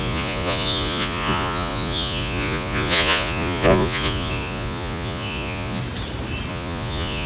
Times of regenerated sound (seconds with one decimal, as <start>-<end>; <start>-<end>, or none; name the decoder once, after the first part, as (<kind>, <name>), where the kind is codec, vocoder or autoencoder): 0.0-5.8 (vocoder, Vocos); 6.5-7.3